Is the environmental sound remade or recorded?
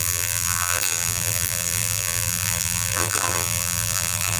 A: remade